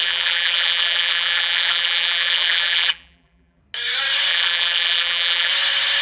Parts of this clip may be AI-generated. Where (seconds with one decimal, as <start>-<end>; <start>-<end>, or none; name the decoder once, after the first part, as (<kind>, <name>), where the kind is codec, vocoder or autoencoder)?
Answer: 0.0-3.6 (vocoder, BigVGAN v2); 4.3-5.5